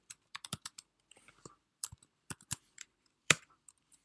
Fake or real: fake